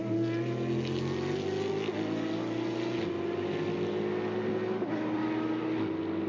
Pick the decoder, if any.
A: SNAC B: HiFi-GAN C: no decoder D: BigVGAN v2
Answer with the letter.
C